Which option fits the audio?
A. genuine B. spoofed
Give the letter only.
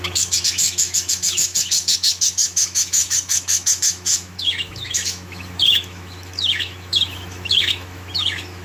B